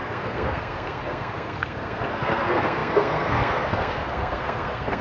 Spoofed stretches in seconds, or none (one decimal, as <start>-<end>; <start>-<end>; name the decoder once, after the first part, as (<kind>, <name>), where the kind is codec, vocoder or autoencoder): 0.0-5.0 (codec, SNAC)